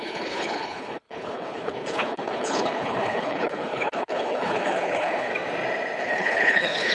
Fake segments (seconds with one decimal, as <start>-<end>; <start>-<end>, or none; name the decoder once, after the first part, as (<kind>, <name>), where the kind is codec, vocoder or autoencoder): 0.0-5.3 (codec, HILCodec); 6.0-6.9